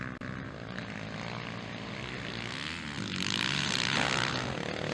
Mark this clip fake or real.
real